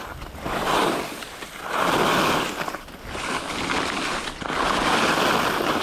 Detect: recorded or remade recorded